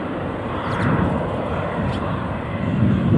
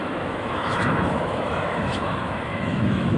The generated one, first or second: second